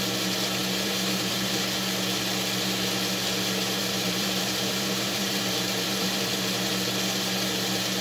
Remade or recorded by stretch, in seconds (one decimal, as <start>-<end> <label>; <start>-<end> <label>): 0.0-0.6 recorded; 0.6-1.6 remade; 1.6-3.8 recorded; 3.8-6.7 remade; 6.7-8.0 recorded